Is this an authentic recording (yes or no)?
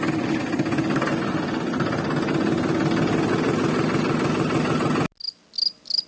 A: yes